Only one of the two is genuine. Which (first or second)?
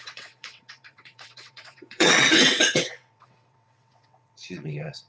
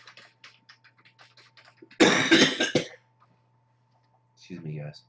second